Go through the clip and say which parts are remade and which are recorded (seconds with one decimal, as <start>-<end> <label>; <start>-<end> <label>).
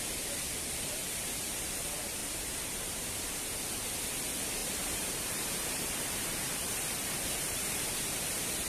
0.0-2.2 recorded; 2.2-3.4 remade; 3.4-4.6 recorded; 4.6-8.7 remade